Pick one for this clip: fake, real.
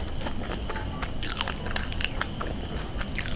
real